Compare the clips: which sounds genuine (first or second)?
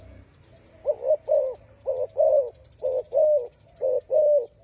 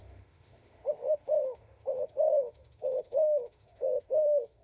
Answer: first